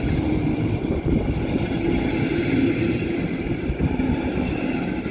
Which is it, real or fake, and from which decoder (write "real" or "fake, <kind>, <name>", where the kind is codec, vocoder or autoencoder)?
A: real